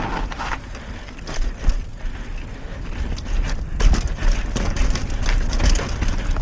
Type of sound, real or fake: real